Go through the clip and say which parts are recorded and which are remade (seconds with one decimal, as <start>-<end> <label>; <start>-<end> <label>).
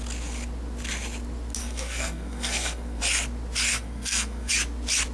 0.0-1.6 recorded; 1.6-3.0 remade; 3.0-3.7 recorded; 3.7-4.5 remade; 4.5-5.1 recorded